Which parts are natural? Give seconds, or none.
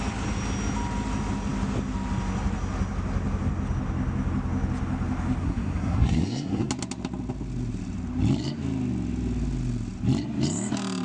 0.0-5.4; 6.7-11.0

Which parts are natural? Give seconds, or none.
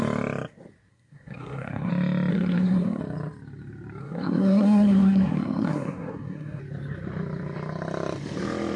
0.0-0.9; 1.9-2.3; 3.0-4.0; 6.6-8.8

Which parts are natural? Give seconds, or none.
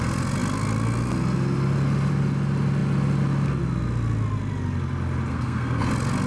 0.0-5.3; 5.8-6.3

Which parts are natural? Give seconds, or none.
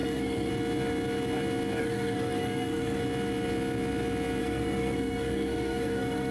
0.5-1.8; 3.0-4.4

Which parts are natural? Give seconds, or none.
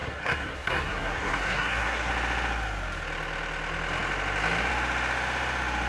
2.1-5.9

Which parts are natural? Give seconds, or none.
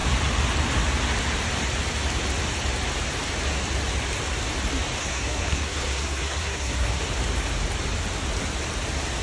0.0-5.0; 7.0-9.2